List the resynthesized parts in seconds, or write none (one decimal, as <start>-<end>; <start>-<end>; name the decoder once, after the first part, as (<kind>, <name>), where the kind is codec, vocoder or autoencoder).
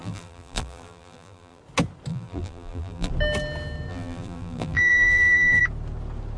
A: 0.0-1.6 (vocoder, BigVGAN v2); 2.1-3.1; 3.9-5.6